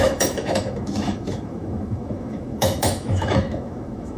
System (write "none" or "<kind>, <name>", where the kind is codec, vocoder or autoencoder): autoencoder, DAC-VAE